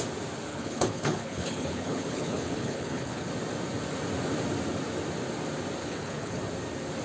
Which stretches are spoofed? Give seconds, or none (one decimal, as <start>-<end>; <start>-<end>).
0.5-3.3; 5.8-6.4